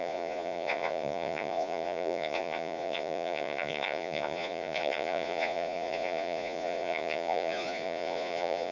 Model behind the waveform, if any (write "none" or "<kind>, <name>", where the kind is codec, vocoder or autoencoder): vocoder, Vocos